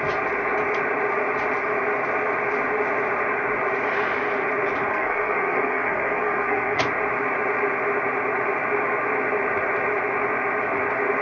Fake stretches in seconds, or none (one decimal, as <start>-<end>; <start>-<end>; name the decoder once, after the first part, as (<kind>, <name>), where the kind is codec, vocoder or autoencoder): 4.9-6.8 (codec, SNAC)